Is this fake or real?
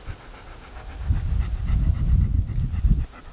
real